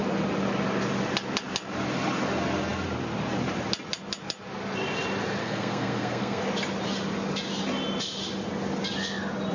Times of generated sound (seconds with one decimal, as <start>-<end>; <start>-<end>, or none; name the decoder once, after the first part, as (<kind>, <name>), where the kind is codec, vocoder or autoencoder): 5.4-6.4 (codec, SNAC)